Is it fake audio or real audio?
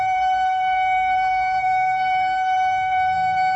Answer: fake